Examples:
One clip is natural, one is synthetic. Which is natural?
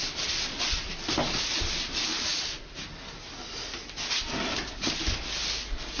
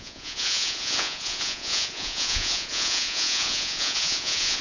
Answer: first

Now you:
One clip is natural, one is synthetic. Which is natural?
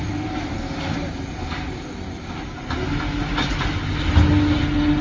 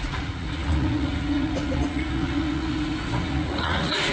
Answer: first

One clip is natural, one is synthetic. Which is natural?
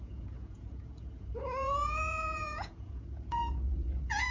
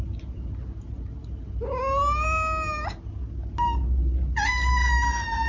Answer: second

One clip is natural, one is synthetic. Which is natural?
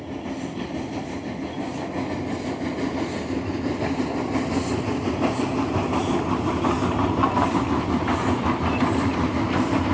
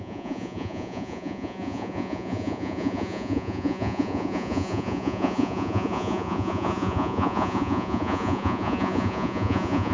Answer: first